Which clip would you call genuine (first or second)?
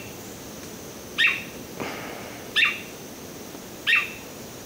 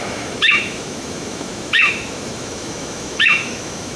first